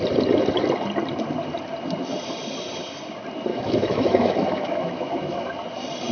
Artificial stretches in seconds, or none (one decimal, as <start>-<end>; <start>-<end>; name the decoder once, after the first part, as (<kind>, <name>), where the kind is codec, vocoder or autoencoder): 3.5-5.5 (autoencoder, DAC-VAE)